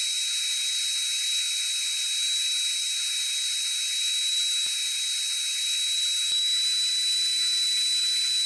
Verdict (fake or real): real